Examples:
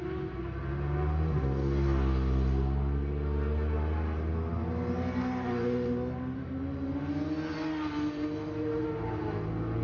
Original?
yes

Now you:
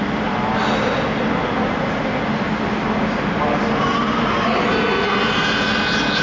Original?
yes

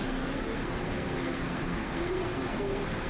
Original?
no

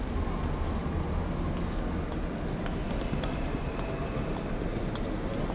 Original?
yes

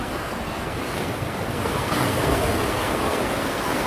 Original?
no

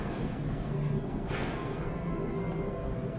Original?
no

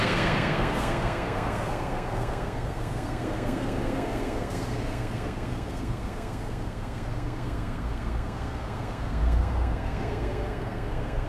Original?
no